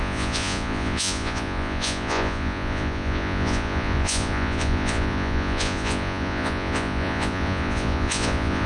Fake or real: fake